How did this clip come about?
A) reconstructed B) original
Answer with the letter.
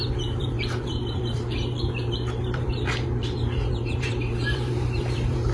A